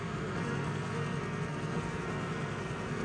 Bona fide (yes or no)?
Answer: no